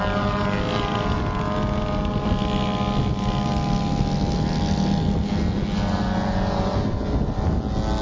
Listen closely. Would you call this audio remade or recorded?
recorded